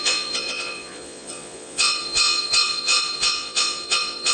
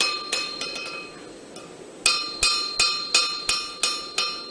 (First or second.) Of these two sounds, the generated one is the first